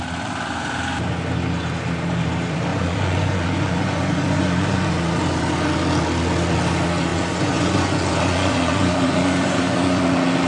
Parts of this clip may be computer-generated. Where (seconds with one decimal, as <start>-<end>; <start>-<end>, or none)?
2.7-4.9; 7.1-10.0